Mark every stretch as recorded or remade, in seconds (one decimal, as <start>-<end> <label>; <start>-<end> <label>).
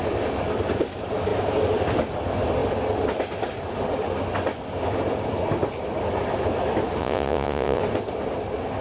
0.0-7.0 recorded; 7.0-7.8 remade; 7.8-8.8 recorded